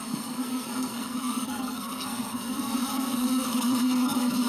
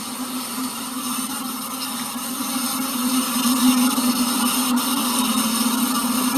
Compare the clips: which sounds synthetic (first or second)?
first